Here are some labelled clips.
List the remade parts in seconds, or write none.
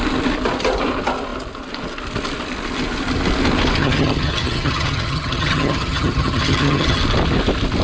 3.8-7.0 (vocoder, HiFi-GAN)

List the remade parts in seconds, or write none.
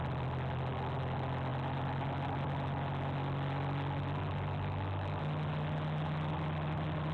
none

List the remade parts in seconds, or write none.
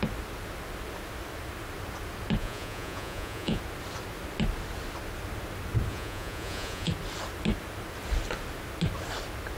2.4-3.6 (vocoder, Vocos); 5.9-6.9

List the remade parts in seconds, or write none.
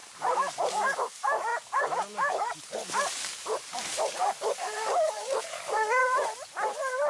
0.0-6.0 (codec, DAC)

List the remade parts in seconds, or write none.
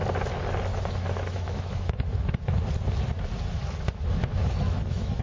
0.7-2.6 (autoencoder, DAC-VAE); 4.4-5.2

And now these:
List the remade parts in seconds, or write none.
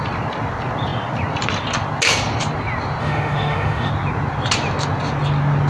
3.0-3.9 (autoencoder, DAC-VAE)